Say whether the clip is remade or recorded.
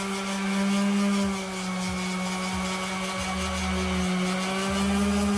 recorded